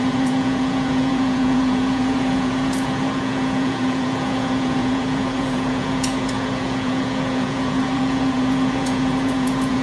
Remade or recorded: remade